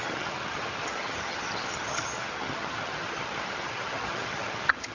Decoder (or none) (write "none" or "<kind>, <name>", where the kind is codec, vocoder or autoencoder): vocoder, HiFi-GAN